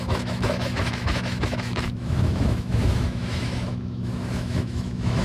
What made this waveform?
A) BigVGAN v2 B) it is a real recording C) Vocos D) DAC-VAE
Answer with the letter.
D